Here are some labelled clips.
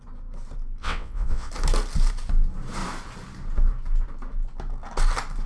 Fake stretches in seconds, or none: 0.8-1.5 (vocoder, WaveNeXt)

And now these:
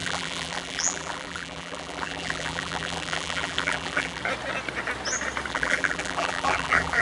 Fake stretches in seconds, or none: 0.0-4.2 (vocoder, BigVGAN v2); 5.5-7.0

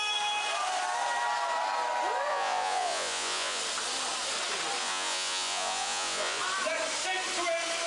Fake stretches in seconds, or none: 2.3-3.6 (vocoder, Vocos); 4.8-6.4

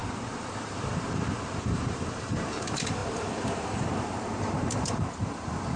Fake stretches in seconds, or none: 0.0-5.8 (vocoder, BigVGAN v2)

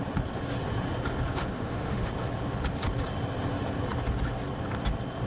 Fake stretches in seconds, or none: 1.4-2.1 (autoencoder, DAC-VAE)

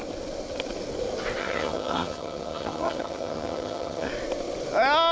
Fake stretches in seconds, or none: 1.4-4.1 (vocoder, HiFi-GAN)

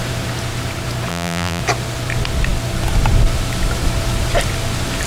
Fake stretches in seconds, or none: 1.1-1.6 (vocoder, BigVGAN v2)